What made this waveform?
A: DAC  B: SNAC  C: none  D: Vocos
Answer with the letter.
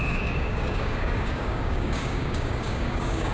A